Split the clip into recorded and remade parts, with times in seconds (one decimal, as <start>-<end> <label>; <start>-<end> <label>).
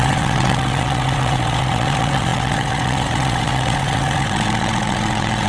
0.0-5.5 remade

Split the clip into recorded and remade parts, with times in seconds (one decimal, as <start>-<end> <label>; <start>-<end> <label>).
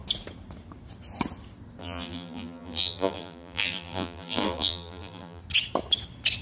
0.0-1.8 recorded; 1.8-5.4 remade; 5.4-6.4 recorded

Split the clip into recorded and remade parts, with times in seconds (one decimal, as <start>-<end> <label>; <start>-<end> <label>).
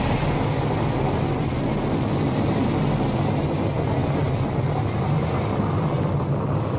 0.0-6.8 recorded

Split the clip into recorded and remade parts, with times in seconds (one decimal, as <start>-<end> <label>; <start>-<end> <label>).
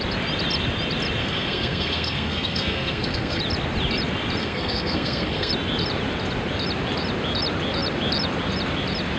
0.0-1.2 recorded; 1.2-3.4 remade; 3.4-4.4 recorded; 4.4-5.5 remade; 5.5-9.2 recorded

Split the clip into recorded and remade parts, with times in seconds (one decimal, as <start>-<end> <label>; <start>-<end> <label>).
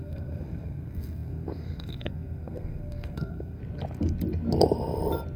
0.0-3.6 remade; 3.6-5.4 recorded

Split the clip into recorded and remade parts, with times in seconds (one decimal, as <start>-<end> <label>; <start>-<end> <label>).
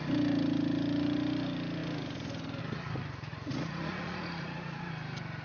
0.0-3.3 recorded; 3.3-4.9 remade; 4.9-5.4 recorded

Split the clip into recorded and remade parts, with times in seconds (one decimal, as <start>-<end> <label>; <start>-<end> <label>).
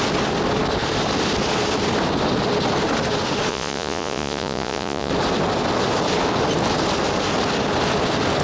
0.0-3.5 recorded; 3.5-5.1 remade; 5.1-8.4 recorded